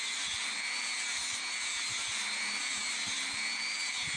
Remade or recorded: remade